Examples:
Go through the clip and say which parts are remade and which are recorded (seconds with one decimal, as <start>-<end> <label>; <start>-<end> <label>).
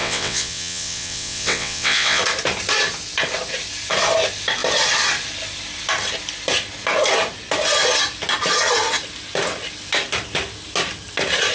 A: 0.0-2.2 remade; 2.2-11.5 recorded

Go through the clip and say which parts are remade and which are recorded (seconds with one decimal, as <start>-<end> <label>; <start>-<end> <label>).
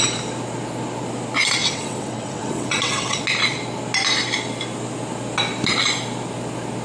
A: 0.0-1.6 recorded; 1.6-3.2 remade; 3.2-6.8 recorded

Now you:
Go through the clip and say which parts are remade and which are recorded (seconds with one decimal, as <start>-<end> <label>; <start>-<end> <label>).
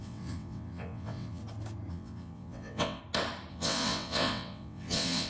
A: 0.0-1.4 remade; 1.4-1.9 recorded; 1.9-3.0 remade; 3.0-3.5 recorded; 3.5-5.3 remade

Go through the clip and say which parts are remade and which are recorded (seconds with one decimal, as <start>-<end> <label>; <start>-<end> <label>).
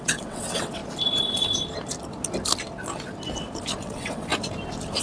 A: 0.0-0.8 remade; 0.8-3.8 recorded; 3.8-4.3 remade; 4.3-5.0 recorded